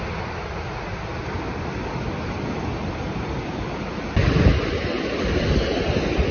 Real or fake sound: real